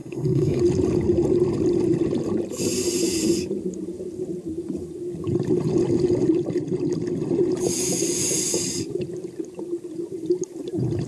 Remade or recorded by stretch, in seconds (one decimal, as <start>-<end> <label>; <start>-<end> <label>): 0.0-0.6 remade; 0.6-11.1 recorded